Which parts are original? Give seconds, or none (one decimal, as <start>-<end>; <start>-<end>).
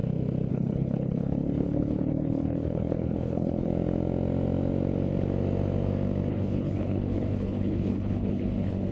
0.0-0.5; 3.7-6.3